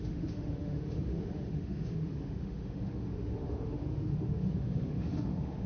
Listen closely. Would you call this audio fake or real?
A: fake